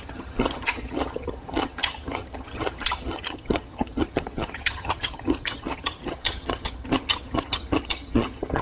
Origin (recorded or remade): remade